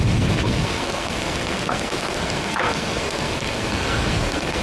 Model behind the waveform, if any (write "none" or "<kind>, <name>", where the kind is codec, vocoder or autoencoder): codec, SNAC